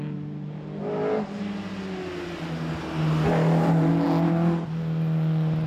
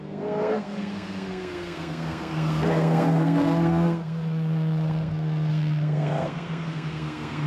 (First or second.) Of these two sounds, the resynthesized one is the second